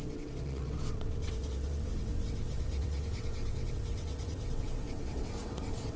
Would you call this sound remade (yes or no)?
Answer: yes